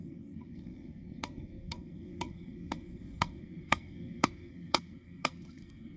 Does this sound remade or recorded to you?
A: remade